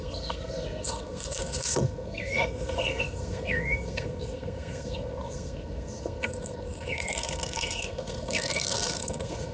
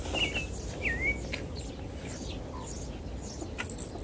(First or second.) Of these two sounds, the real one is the second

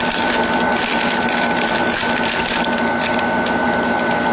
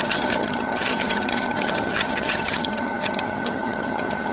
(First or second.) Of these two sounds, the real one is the first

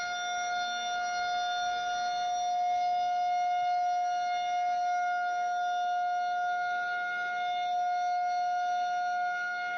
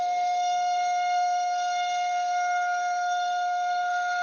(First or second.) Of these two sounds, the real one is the first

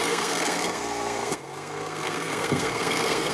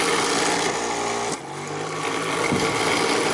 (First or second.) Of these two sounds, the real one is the second